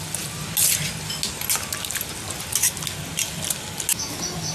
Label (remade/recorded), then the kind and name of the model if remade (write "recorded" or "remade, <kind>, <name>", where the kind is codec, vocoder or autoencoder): recorded